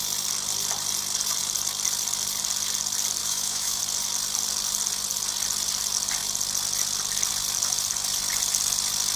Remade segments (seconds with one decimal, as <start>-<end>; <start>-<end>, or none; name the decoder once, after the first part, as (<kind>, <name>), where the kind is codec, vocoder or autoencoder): 3.2-3.8 (autoencoder, DAC-VAE)